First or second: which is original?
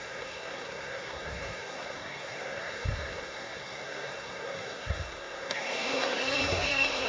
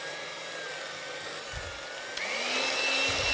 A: second